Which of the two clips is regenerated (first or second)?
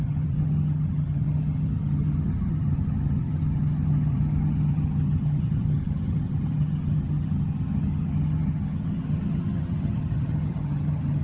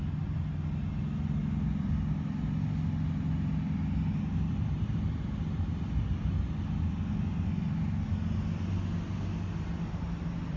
first